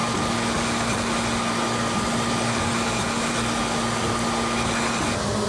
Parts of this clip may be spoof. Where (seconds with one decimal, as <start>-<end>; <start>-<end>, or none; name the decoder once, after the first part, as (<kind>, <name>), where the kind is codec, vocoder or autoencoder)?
none